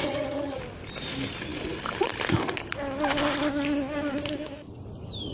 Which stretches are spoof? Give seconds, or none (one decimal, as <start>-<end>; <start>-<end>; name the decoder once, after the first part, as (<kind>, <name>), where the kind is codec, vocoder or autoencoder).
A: 0.0-0.6 (vocoder, HiFi-GAN)